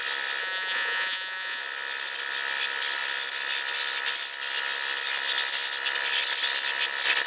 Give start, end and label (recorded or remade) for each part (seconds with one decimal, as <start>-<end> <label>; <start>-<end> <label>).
0.0-0.4 recorded; 0.4-1.6 remade; 1.6-7.3 recorded